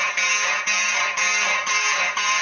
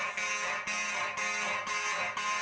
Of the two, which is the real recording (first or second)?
second